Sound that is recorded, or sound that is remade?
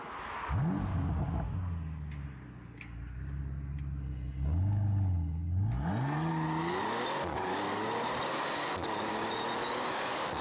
recorded